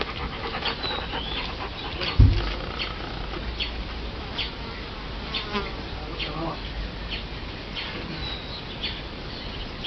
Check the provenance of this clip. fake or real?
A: real